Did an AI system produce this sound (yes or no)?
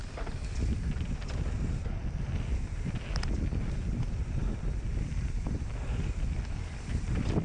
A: no